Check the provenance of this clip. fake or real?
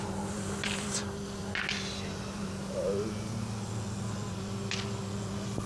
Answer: real